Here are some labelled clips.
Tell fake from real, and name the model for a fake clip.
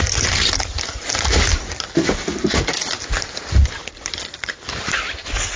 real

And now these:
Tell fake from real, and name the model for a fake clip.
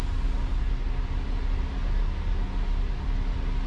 real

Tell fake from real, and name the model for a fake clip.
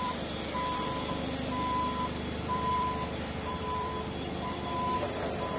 fake, vocoder, BigVGAN v2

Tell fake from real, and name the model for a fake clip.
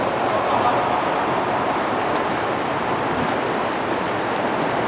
real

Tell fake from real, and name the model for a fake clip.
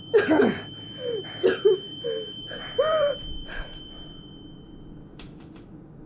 fake, vocoder, BigVGAN v2